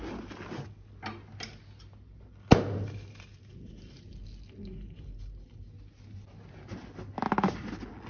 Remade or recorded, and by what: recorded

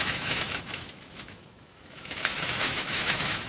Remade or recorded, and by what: remade, autoencoder, DAC-VAE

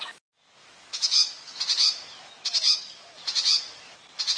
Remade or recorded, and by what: remade, autoencoder, DAC-VAE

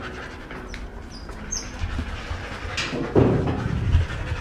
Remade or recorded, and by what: recorded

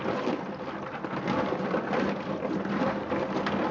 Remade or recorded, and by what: recorded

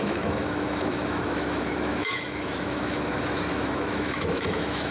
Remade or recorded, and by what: remade, autoencoder, DAC-VAE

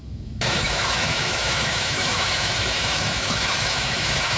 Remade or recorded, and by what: remade, autoencoder, DAC-VAE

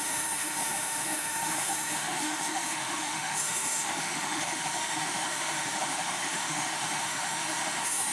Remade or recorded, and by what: remade, autoencoder, DAC-VAE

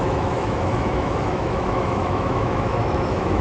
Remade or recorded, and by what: remade, autoencoder, DAC-VAE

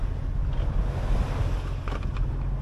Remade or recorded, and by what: recorded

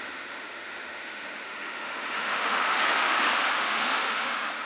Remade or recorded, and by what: remade, autoencoder, DAC-VAE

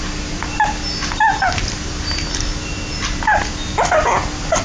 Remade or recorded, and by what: recorded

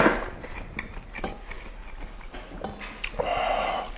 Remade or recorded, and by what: recorded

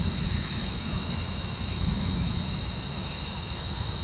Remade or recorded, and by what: remade, autoencoder, DAC-VAE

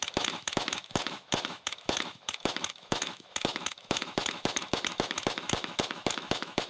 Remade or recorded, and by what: remade, autoencoder, DAC-VAE